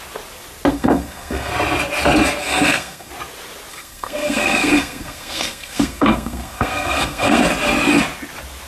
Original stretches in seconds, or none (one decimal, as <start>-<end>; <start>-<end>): 0.0-0.7; 1.5-2.4; 3.1-3.7; 7.4-8.7